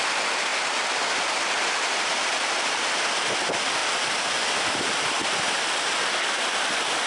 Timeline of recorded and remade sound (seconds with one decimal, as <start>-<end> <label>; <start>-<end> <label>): 0.0-7.1 remade